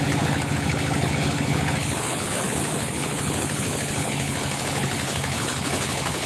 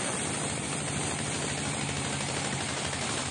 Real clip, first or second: second